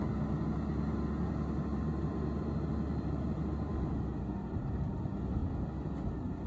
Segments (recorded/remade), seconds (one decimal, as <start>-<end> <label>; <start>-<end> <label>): 0.0-1.7 recorded; 1.7-3.7 remade; 3.7-6.5 recorded